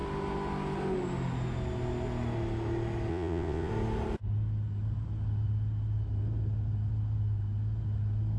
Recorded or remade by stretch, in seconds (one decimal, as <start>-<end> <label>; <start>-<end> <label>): 0.0-3.1 recorded; 3.1-3.7 remade; 3.7-8.4 recorded